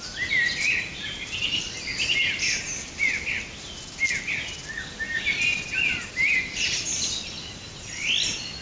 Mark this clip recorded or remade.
recorded